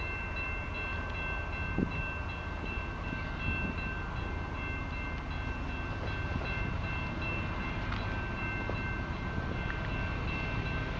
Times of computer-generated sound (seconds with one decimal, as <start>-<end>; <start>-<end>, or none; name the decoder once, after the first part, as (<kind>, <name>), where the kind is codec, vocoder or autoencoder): none